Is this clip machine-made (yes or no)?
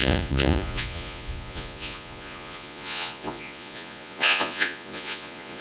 yes